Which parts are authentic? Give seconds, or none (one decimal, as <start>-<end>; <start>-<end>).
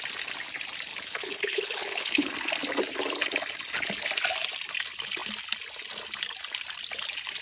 0.0-0.9; 2.3-7.4